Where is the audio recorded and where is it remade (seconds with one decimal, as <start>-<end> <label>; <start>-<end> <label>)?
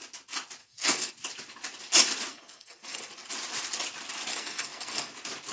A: 0.0-0.6 recorded; 0.6-1.1 remade; 1.1-2.3 recorded; 2.3-3.0 remade; 3.0-4.3 recorded; 4.3-5.1 remade; 5.1-5.5 recorded